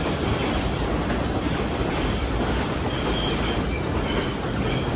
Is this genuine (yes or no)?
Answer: yes